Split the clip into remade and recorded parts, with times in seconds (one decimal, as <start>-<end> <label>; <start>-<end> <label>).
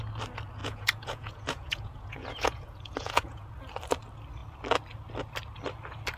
0.0-0.6 recorded; 0.6-3.5 remade; 3.5-6.2 recorded